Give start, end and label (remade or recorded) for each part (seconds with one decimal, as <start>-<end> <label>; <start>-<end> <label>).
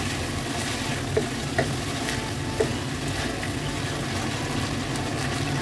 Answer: 0.0-5.6 recorded